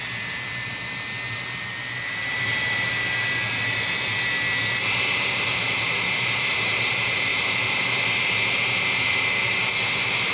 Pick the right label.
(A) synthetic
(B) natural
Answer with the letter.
B